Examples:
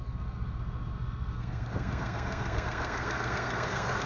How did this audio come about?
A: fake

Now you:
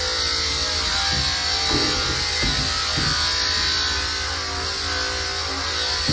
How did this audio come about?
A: real